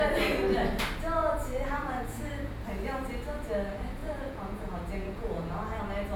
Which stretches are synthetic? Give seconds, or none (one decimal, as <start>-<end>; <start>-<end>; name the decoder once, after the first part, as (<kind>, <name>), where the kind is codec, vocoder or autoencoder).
1.2-2.3 (vocoder, Vocos); 4.0-5.8